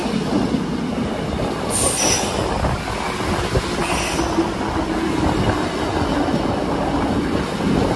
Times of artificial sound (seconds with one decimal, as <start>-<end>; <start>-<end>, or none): none